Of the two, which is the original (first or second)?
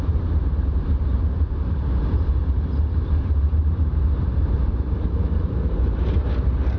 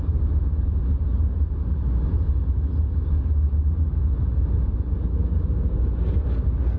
second